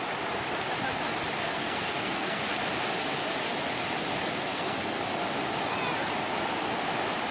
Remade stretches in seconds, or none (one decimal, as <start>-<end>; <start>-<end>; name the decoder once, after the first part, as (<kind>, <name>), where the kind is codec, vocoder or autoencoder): 1.4-2.4 (codec, SNAC); 4.5-5.0